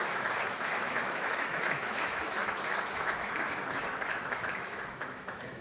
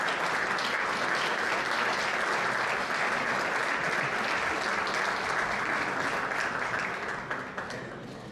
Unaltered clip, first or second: second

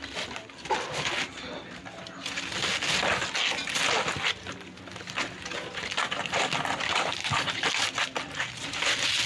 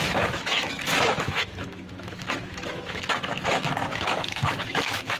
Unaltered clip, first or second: first